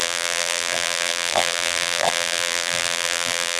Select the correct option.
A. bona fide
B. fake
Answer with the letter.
B